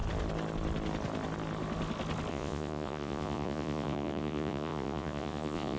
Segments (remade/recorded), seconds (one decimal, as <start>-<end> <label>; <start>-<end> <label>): 0.0-2.3 recorded; 2.3-5.8 remade

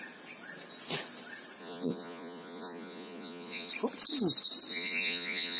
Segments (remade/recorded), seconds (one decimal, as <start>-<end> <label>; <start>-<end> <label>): 0.0-1.6 recorded; 1.6-3.7 remade; 3.7-4.7 recorded; 4.7-5.6 remade